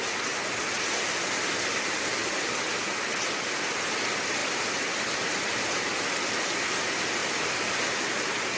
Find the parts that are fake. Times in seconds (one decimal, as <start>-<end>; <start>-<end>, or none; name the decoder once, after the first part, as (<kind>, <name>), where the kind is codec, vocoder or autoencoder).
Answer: 4.4-6.4 (vocoder, BigVGAN v2)